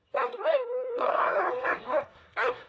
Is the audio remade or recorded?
remade